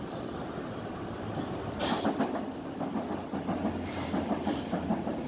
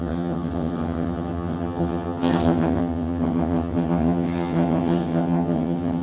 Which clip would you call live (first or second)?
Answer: first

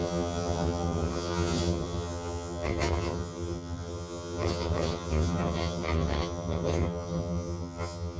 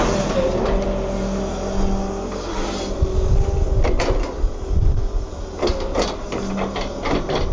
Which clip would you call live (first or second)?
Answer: second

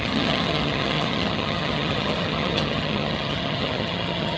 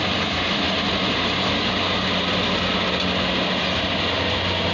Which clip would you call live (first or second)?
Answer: second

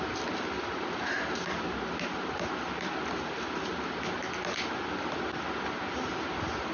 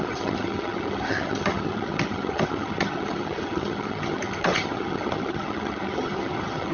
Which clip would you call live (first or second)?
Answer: first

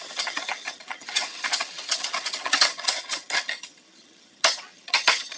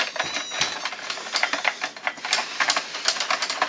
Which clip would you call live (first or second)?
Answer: second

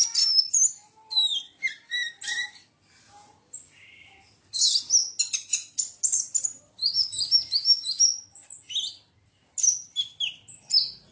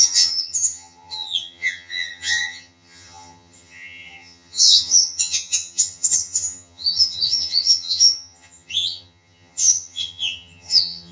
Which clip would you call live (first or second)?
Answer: first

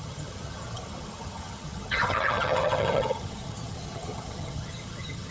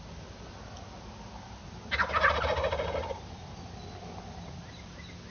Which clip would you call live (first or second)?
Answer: second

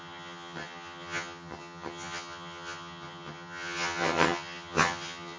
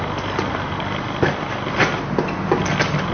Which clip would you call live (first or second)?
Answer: second